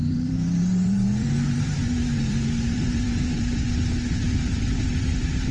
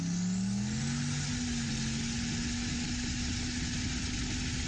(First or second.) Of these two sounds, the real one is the second